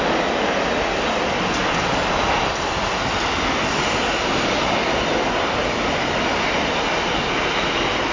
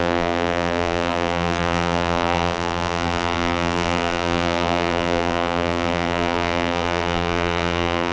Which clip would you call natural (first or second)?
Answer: first